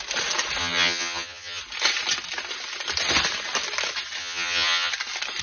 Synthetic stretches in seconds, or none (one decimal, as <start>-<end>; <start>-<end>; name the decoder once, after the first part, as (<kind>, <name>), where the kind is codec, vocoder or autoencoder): 0.6-1.6 (vocoder, HiFi-GAN); 4.2-4.9